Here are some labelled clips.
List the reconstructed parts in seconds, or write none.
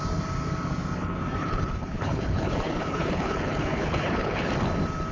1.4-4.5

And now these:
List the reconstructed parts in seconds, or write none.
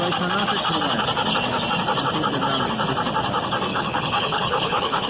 3.7-5.1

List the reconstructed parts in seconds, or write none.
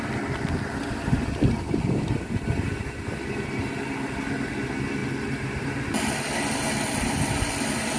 none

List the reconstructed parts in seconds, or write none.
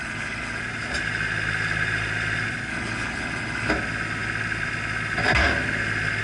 0.0-0.6; 2.7-3.7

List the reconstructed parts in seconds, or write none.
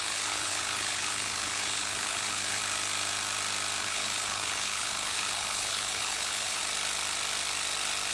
0.0-2.6; 3.8-6.6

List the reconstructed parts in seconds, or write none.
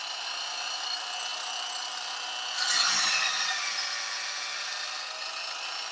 none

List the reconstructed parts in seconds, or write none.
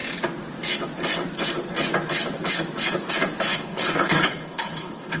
3.5-5.2